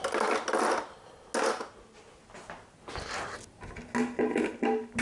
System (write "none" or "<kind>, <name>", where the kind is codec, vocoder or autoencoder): none